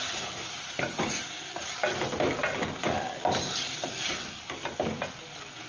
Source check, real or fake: real